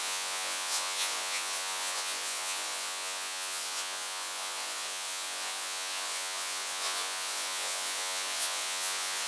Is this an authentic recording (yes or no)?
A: no